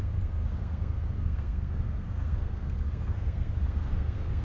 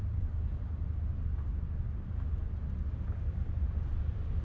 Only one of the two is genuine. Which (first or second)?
second